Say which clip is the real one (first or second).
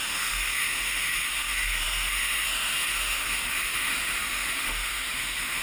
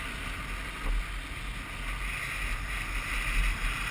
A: second